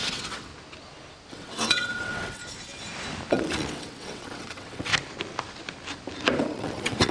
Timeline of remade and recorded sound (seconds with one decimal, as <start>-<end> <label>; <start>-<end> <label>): 0.0-0.5 remade; 0.5-1.3 recorded; 1.3-2.4 remade; 2.4-3.3 recorded; 3.3-4.9 remade; 4.9-6.4 recorded; 6.4-7.1 remade